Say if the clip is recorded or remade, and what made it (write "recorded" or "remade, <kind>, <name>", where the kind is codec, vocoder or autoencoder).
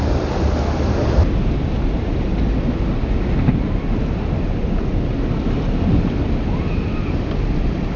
recorded